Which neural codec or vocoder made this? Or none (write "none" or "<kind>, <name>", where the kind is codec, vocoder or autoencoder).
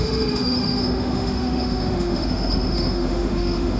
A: autoencoder, DAC-VAE